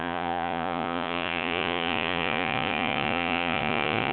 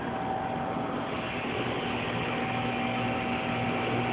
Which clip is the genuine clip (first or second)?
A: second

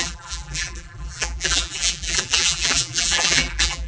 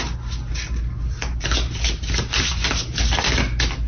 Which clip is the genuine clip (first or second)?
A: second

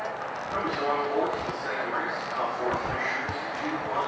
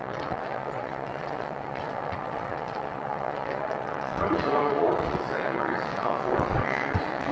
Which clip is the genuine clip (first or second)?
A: first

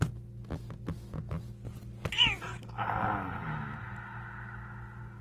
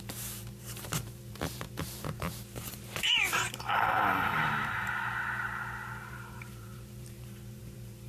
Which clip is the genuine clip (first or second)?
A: first